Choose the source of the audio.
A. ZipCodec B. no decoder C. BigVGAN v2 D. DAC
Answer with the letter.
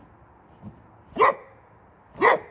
B